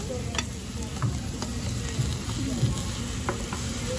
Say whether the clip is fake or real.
real